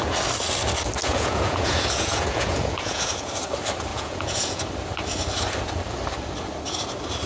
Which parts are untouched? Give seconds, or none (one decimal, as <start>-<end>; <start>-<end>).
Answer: 0.0-1.0; 3.3-3.9; 4.6-7.3